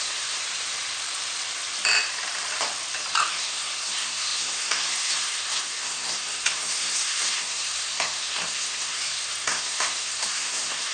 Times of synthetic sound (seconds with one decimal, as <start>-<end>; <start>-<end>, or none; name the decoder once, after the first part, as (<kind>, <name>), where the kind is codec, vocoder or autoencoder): 0.0-0.4 (codec, SNAC); 3.3-10.9